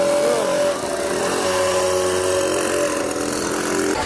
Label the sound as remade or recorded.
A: recorded